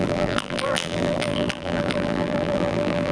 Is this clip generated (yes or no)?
yes